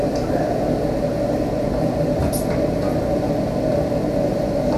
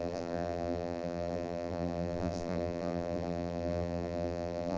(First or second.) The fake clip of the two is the second